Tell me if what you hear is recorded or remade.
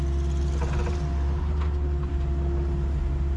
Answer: recorded